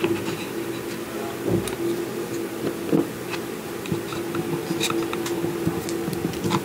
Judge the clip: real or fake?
real